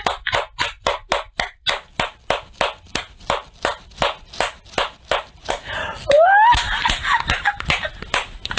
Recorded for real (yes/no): yes